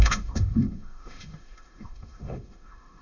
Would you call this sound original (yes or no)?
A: no